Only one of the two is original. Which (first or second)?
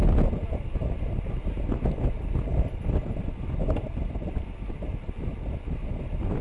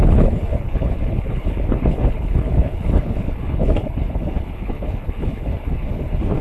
first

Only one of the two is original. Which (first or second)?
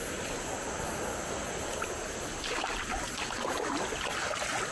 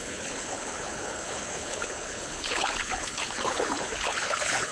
first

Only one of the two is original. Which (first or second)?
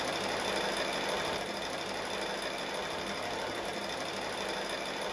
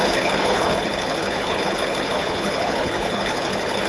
first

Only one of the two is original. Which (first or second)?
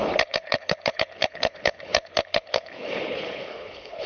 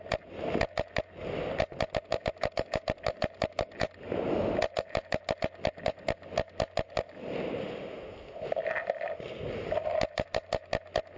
second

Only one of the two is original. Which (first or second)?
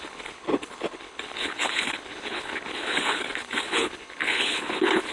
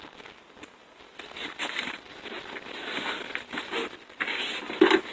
second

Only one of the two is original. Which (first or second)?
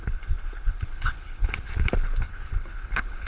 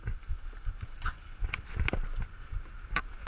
second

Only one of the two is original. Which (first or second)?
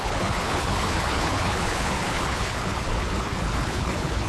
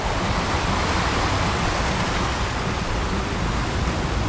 second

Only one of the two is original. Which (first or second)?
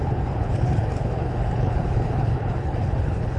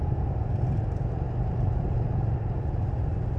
second